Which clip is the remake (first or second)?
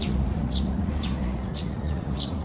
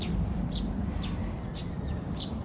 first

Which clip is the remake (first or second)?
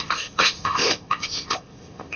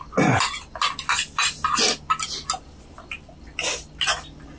first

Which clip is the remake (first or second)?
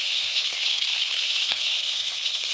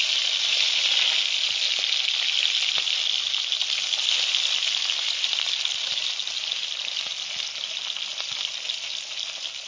first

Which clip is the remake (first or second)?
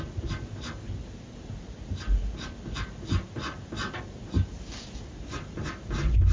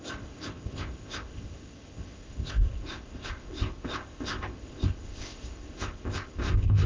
second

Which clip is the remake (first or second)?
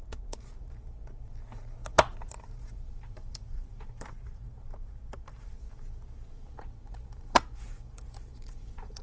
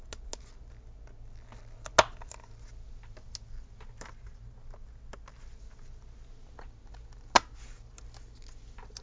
first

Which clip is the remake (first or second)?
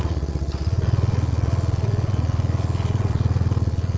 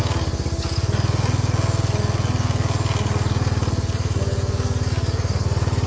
first